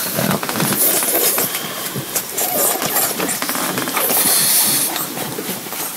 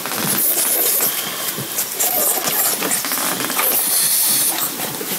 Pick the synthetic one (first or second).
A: first